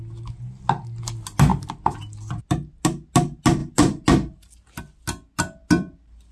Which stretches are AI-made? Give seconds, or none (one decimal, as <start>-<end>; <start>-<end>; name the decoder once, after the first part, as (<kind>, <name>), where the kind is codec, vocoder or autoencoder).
none